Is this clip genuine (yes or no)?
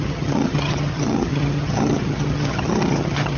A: no